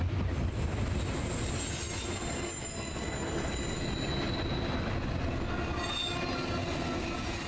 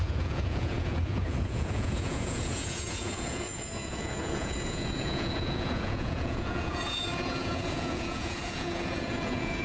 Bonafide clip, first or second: first